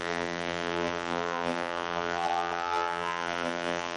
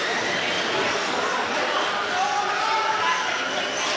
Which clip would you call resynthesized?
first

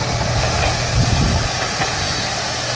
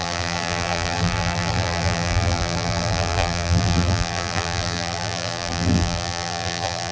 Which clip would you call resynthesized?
second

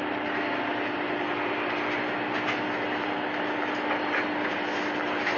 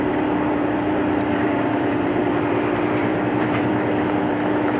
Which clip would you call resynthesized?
second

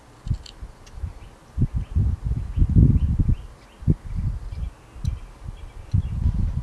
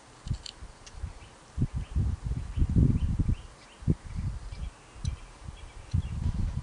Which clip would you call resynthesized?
second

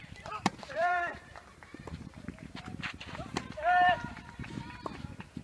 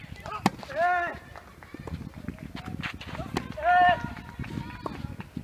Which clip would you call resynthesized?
first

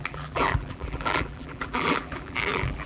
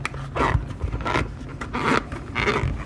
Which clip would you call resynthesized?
first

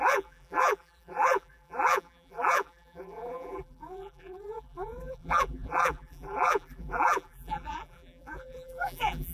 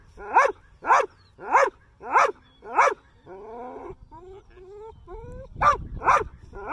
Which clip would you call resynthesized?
first